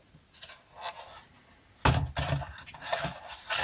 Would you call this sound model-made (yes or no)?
no